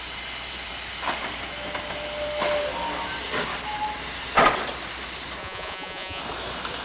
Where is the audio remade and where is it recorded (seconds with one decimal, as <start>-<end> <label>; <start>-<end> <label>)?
0.0-5.4 recorded; 5.4-6.2 remade; 6.2-6.8 recorded